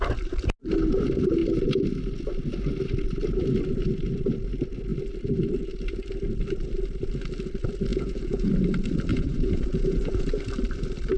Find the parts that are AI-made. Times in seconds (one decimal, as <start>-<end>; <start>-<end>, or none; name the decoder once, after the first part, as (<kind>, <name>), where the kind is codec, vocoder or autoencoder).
7.9-8.5 (vocoder, Vocos); 9.1-10.3